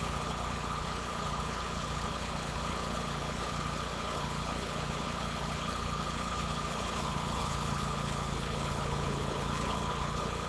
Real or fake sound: fake